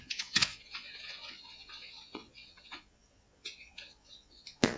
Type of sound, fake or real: fake